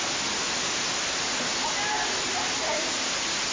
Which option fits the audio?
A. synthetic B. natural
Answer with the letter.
B